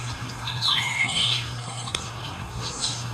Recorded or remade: remade